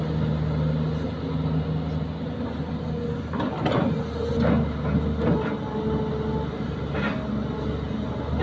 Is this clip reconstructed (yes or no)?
no